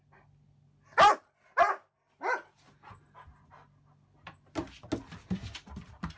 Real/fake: real